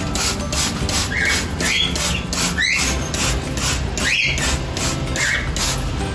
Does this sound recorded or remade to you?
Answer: recorded